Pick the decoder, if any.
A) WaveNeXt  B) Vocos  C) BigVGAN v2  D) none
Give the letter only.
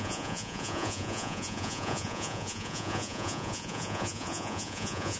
B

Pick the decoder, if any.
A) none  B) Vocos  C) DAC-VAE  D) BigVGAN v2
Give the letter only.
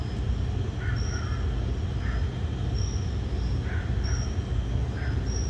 A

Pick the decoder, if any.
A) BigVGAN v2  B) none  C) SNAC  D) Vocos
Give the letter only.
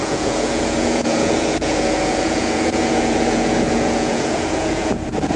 D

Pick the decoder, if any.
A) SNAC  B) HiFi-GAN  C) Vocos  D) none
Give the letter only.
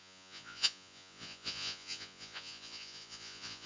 C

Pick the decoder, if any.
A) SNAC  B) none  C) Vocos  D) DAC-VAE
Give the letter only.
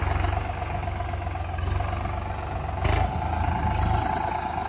B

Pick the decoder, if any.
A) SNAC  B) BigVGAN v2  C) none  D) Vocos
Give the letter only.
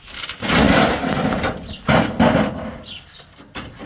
C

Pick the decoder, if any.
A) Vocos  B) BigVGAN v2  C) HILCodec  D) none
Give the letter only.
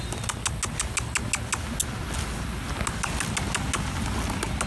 D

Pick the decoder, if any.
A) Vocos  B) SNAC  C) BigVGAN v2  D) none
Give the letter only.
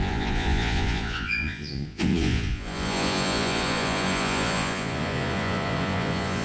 A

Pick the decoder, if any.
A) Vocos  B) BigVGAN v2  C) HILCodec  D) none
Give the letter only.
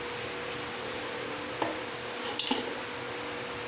D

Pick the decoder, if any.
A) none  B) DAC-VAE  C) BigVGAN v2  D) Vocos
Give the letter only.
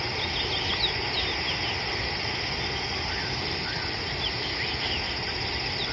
A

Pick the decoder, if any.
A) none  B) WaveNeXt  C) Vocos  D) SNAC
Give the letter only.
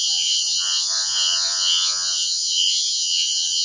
C